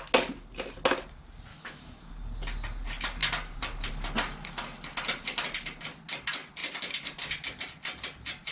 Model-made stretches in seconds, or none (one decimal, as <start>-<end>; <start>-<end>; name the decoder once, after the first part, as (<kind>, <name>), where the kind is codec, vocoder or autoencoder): 1.5-2.1 (autoencoder, DAC-VAE)